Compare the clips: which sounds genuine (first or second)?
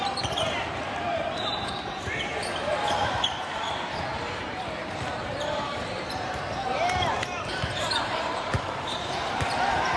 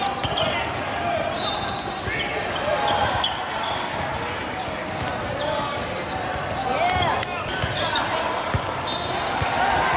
second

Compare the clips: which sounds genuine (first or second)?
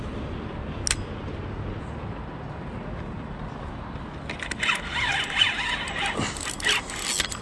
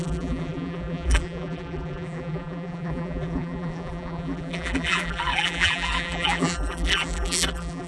first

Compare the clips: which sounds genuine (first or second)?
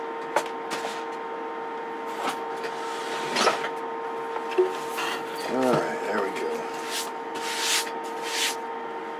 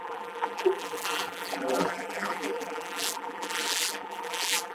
first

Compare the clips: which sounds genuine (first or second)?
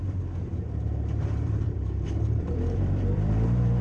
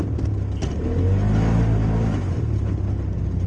second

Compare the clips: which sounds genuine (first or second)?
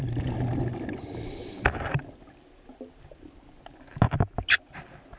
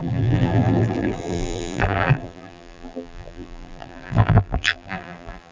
first